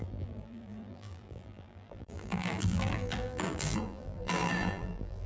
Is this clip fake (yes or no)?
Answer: yes